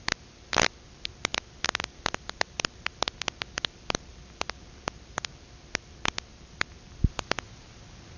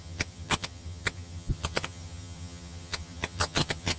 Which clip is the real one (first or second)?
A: first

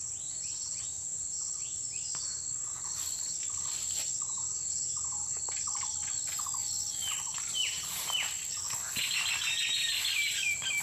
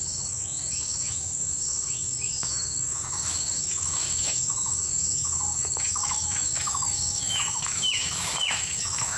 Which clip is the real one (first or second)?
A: first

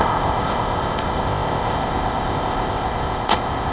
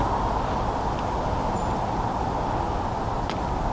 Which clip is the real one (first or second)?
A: second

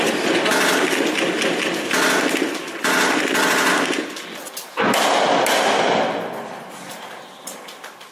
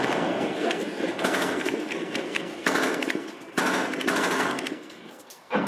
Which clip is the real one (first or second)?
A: first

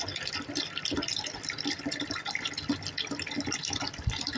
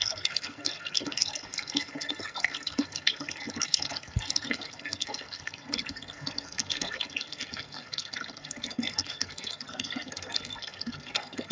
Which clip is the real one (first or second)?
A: first